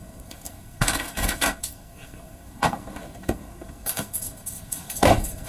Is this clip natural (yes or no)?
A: no